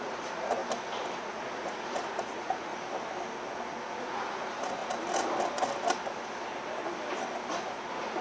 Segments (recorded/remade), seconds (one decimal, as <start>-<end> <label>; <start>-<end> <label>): 0.0-0.6 remade; 0.6-1.2 recorded; 1.2-2.7 remade; 2.7-4.0 recorded; 4.0-4.8 remade; 4.8-7.6 recorded; 7.6-8.2 remade